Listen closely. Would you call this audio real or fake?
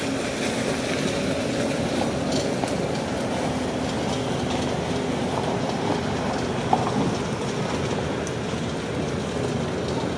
real